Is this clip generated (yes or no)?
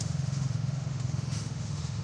yes